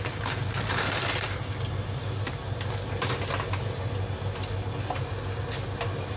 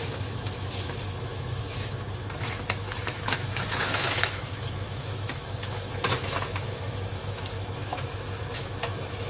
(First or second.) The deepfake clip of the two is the second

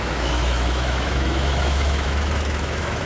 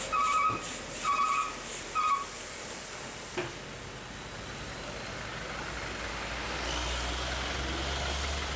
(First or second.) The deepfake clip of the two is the first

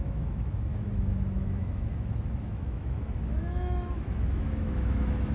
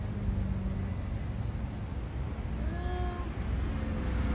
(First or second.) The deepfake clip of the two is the first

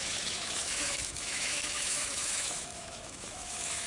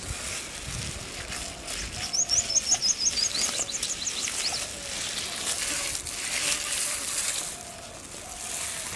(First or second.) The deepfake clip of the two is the first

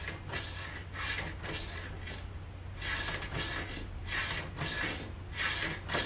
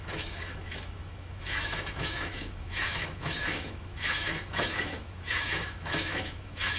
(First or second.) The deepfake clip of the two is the second